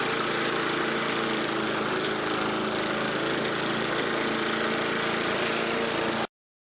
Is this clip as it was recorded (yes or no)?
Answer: yes